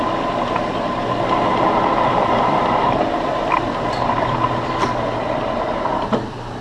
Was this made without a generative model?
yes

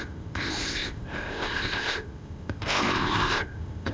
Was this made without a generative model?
no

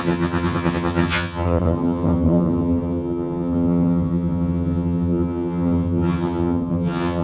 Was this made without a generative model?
no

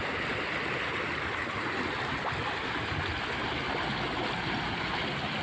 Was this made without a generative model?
yes